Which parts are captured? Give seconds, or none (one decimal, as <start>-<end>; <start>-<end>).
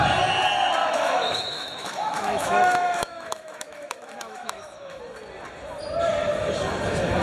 0.0-0.8; 5.0-7.2